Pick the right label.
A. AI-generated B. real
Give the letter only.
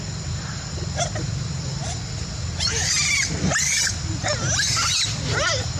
B